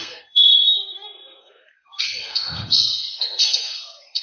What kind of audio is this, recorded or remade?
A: remade